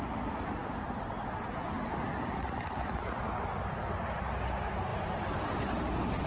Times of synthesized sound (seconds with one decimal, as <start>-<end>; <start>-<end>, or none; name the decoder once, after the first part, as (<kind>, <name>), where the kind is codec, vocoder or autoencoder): 0.6-3.6 (vocoder, BigVGAN v2)